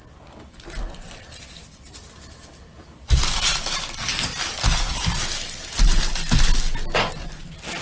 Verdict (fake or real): real